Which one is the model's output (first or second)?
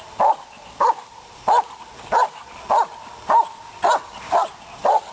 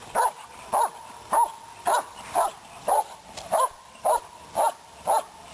second